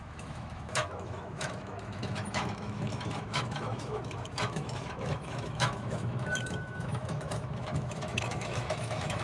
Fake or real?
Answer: fake